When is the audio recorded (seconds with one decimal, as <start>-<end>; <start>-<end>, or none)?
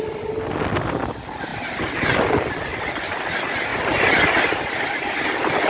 0.0-5.7